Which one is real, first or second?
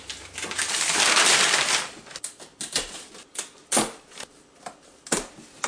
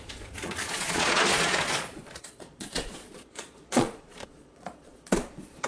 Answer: first